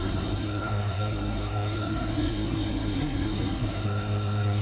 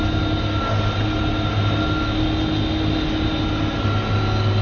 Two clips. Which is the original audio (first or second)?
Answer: second